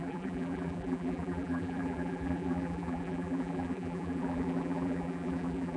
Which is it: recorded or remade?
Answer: remade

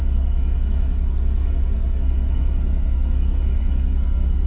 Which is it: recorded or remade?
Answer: remade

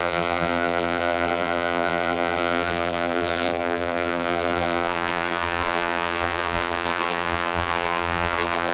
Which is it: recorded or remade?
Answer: remade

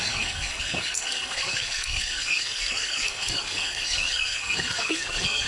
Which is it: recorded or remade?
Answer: remade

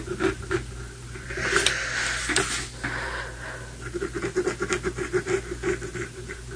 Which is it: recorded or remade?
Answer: recorded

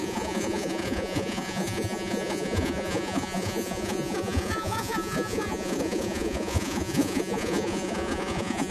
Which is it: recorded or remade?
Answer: remade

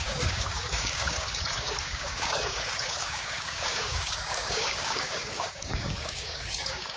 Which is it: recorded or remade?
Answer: remade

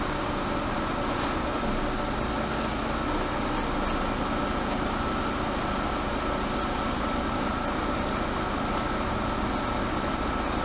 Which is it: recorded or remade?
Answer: recorded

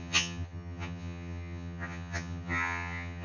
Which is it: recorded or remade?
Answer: remade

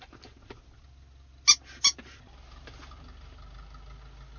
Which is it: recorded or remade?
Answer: recorded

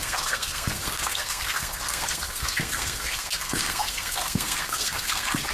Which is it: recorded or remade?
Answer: remade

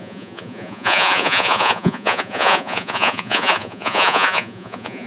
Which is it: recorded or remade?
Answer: remade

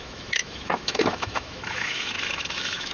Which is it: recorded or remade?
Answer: remade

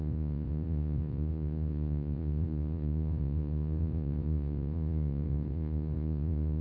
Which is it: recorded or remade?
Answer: remade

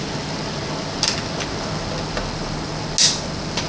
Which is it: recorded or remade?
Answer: recorded